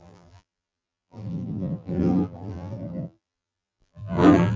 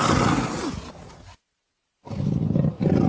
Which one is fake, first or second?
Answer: first